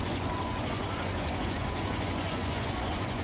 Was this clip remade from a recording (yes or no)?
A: yes